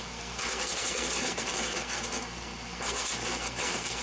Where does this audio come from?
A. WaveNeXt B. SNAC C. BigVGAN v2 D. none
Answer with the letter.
B